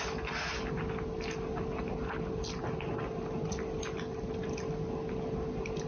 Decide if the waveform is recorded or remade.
recorded